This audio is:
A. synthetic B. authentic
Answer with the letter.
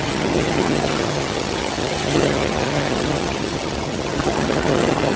A